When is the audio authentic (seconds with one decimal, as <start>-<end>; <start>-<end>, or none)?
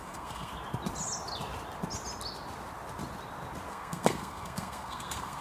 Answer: 0.5-3.7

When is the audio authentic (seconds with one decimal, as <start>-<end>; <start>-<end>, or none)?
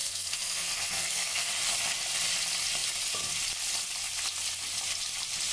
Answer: 1.5-5.5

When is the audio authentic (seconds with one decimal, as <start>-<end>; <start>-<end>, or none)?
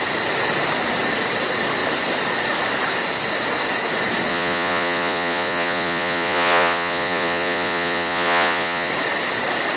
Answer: 0.0-4.3; 8.9-9.8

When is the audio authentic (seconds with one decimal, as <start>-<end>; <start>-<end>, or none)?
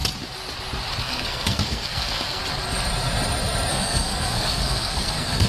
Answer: 0.0-1.0; 2.4-3.7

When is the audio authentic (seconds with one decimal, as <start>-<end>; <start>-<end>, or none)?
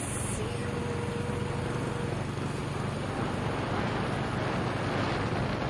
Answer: 0.0-5.7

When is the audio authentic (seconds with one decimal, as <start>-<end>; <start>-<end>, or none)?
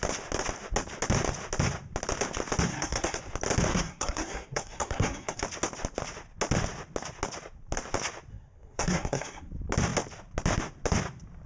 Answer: 0.0-2.7; 3.2-3.7; 5.4-8.3; 9.5-11.5